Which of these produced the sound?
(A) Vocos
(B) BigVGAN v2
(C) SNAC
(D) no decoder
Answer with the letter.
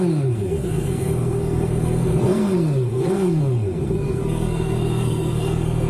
C